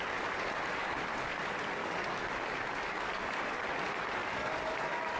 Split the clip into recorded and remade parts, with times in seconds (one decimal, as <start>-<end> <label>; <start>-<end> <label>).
0.0-0.8 recorded; 0.8-1.4 remade; 1.4-1.8 recorded; 1.8-3.4 remade; 3.4-4.2 recorded; 4.2-5.2 remade